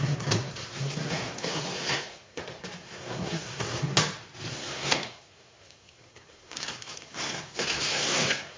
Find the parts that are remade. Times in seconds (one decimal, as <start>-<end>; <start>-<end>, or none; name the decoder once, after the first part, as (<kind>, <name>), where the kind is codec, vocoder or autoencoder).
0.0-3.9 (codec, SNAC); 4.5-8.6